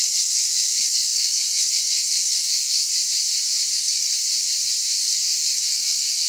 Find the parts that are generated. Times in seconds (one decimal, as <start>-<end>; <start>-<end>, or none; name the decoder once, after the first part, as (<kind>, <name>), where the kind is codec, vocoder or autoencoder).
0.0-2.9 (codec, SNAC); 3.7-4.2; 5.0-6.3